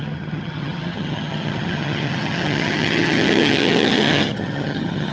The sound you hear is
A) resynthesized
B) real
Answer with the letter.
A